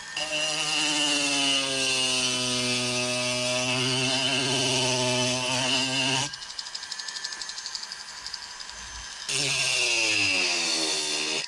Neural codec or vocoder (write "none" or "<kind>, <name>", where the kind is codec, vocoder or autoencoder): none